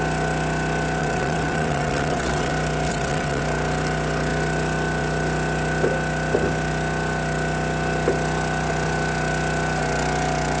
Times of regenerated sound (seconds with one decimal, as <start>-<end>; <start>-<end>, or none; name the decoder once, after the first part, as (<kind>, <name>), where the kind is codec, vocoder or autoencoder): 1.0-2.5 (vocoder, WaveNeXt); 2.9-3.4